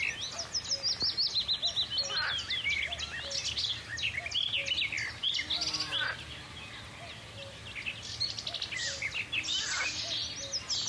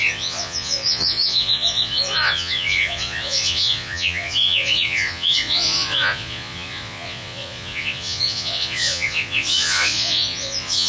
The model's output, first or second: second